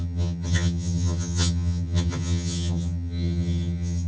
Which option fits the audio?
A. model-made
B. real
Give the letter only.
A